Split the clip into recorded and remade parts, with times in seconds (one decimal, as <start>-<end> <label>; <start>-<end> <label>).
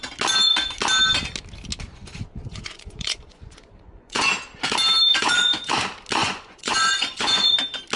0.0-1.9 recorded; 1.9-4.3 remade; 4.3-5.1 recorded; 5.1-5.7 remade; 5.7-6.2 recorded; 6.2-7.6 remade; 7.6-8.0 recorded